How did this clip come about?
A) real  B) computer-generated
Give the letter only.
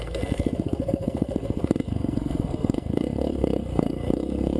B